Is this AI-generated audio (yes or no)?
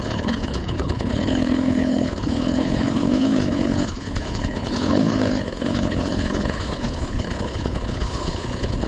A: yes